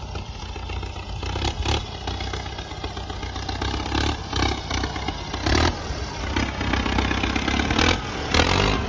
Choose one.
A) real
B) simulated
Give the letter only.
A